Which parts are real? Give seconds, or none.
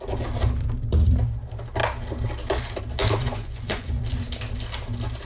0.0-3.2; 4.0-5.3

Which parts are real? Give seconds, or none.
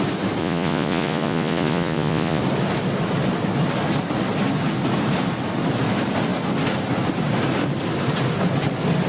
0.0-0.4; 2.4-9.1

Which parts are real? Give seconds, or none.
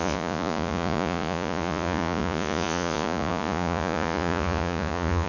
none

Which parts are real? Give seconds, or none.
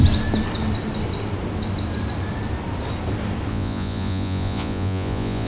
0.0-3.5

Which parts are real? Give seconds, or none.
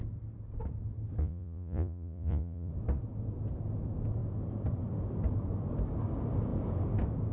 0.0-1.2; 2.7-7.3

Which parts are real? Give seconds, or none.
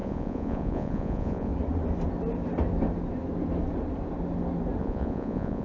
1.5-4.8